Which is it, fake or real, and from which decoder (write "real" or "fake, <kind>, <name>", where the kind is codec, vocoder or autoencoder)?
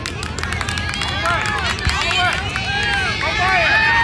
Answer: real